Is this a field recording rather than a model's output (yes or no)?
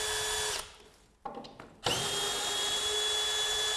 yes